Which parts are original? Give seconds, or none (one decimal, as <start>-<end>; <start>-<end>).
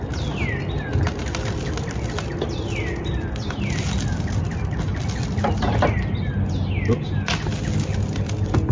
0.0-8.7